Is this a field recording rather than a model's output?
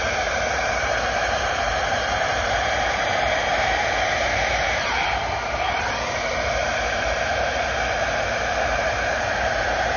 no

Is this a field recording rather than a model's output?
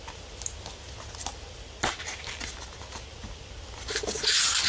yes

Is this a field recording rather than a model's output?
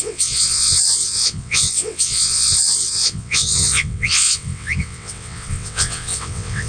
no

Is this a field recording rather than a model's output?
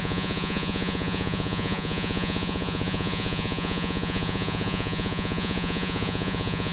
no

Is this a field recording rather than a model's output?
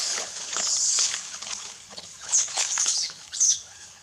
no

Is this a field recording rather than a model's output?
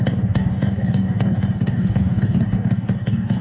no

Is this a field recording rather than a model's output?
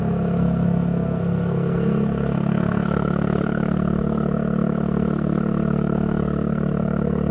no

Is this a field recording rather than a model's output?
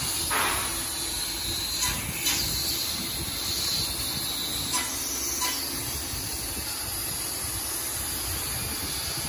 yes